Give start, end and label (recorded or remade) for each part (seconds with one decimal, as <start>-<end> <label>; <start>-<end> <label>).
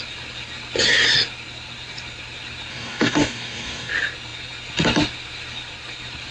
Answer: 0.0-2.7 recorded; 2.7-3.9 remade; 3.9-6.3 recorded